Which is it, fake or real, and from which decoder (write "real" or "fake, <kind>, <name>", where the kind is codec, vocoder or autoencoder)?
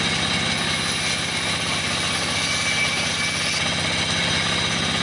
real